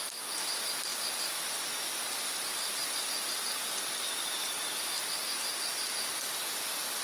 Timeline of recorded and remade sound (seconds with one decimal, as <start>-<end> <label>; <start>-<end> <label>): 0.0-7.0 recorded